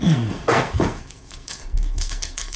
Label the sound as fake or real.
fake